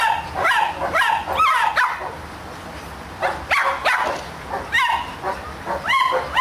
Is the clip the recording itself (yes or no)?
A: yes